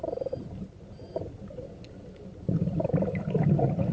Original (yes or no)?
yes